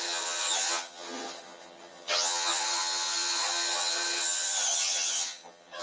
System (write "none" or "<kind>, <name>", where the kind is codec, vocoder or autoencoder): vocoder, HiFi-GAN